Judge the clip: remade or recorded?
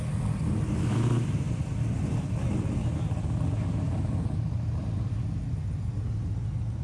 recorded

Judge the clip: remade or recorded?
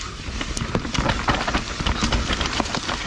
recorded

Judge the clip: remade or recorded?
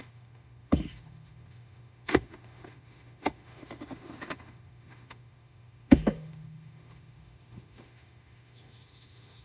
remade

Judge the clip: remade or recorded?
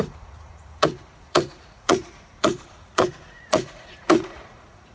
remade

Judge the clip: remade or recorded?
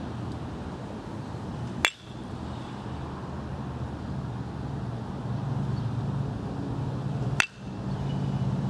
recorded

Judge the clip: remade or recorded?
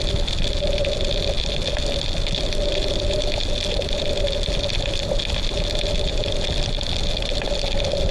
recorded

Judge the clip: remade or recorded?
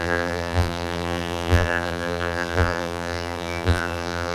remade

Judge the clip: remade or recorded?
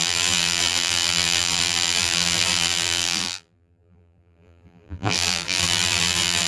remade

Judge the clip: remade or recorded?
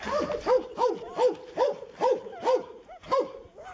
recorded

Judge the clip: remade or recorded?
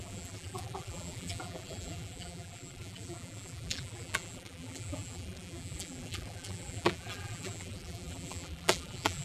remade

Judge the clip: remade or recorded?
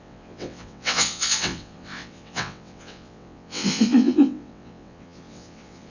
remade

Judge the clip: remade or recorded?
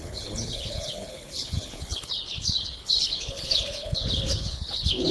remade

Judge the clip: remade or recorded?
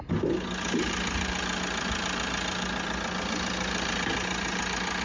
recorded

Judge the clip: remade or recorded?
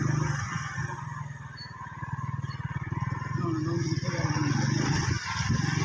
recorded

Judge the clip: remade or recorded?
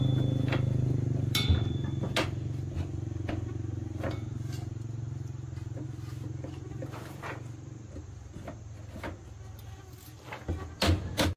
recorded